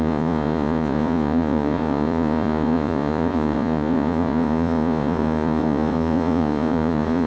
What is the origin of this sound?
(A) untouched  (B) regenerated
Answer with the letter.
B